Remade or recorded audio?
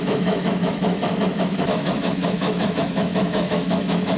remade